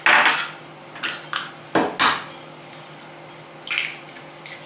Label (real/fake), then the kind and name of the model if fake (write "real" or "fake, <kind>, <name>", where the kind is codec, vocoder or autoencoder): real